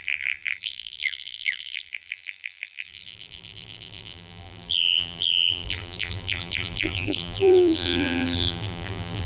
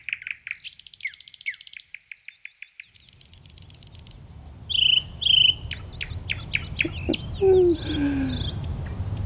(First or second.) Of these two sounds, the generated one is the first